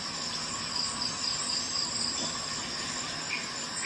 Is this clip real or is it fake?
real